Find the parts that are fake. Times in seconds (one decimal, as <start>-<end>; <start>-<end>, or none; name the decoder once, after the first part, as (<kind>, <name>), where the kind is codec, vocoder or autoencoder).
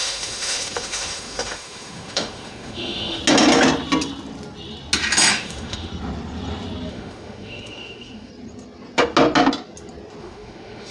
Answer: 0.0-3.2 (autoencoder, DAC-VAE); 5.3-5.9; 6.9-8.3; 10.2-10.9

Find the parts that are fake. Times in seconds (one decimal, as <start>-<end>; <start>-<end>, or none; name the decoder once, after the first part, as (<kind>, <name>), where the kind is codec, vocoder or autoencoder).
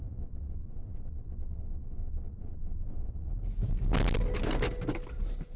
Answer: 0.0-3.3 (vocoder, WaveNeXt)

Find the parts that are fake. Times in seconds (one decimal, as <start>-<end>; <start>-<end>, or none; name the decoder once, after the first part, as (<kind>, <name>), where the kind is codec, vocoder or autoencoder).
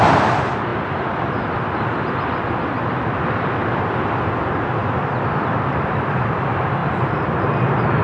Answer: 0.0-0.7 (vocoder, BigVGAN v2); 2.5-3.6; 4.1-6.8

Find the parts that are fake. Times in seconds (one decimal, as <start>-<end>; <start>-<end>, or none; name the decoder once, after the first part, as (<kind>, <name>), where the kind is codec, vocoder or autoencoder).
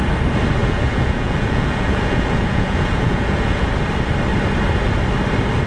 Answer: 0.6-3.7 (vocoder, Vocos)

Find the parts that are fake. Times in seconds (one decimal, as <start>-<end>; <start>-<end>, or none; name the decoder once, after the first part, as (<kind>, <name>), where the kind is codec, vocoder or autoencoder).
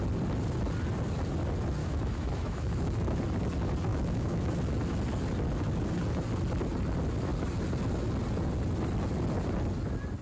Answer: 1.8-3.2 (autoencoder, DAC-VAE); 3.9-4.5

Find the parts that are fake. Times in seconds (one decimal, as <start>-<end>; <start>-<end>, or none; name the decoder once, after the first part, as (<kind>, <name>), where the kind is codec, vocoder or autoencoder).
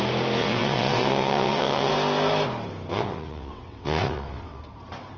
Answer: 0.4-1.9 (vocoder, WaveNeXt); 2.9-4.6